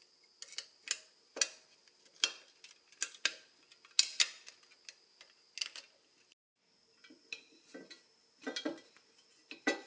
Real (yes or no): yes